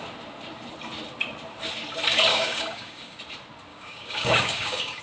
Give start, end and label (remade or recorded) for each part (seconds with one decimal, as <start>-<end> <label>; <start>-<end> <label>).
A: 0.0-2.3 recorded; 2.3-3.2 remade; 3.2-3.7 recorded; 3.7-5.0 remade